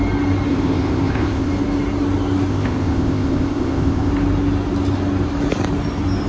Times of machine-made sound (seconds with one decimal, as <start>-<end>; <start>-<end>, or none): 0.5-1.5; 2.5-4.1